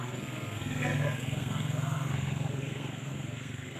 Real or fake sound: fake